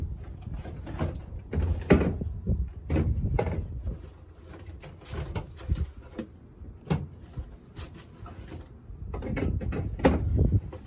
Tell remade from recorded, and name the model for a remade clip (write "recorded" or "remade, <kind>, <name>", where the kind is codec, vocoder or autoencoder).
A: recorded